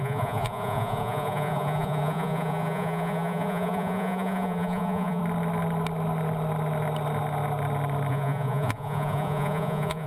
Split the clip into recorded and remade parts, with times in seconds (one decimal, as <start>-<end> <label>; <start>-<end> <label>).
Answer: 0.0-5.2 remade; 5.2-8.1 recorded; 8.1-10.1 remade